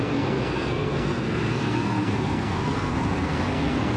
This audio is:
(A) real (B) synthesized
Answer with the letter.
B